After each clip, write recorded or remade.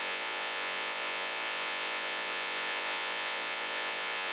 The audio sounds remade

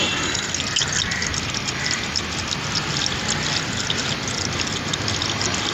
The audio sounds recorded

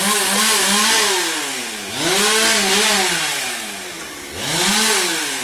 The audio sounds recorded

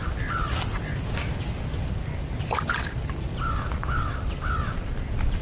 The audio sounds recorded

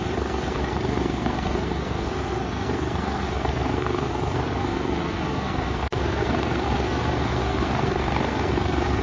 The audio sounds remade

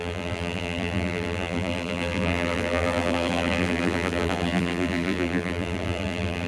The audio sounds remade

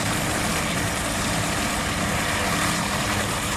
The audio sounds remade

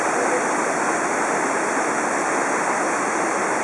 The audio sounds recorded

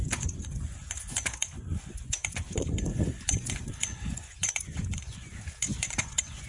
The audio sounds remade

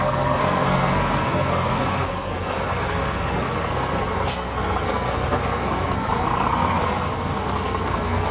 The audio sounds remade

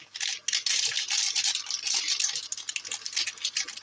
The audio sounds recorded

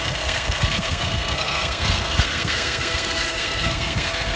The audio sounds remade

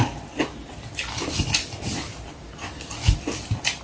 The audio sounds recorded